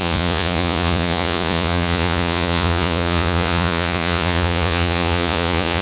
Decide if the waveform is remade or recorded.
remade